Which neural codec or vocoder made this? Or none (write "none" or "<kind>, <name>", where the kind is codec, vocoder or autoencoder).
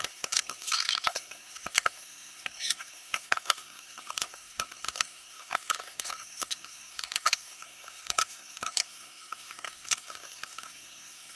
codec, SNAC